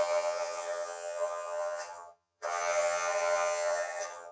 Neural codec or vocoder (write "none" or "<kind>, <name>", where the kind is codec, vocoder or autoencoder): vocoder, HiFi-GAN